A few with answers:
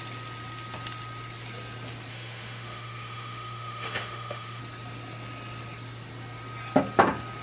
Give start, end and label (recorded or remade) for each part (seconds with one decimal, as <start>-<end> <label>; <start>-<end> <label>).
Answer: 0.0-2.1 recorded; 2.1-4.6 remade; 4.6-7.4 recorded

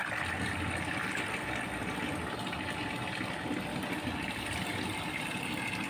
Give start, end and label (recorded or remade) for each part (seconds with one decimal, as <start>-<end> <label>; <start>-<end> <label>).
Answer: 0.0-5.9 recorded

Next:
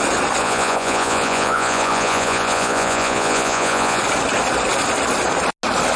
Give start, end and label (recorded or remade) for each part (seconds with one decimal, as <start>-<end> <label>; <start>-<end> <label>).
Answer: 0.0-0.4 recorded; 0.4-4.0 remade; 4.0-6.0 recorded

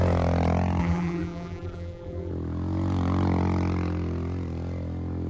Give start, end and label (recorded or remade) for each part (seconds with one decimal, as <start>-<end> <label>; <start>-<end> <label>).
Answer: 0.0-0.8 recorded; 0.8-2.3 remade; 2.3-5.3 recorded

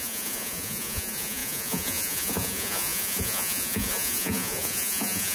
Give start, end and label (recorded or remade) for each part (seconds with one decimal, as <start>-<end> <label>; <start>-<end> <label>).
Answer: 0.0-5.3 remade

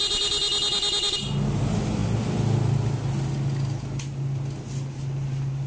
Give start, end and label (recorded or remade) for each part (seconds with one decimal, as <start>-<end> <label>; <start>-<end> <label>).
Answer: 0.0-5.7 recorded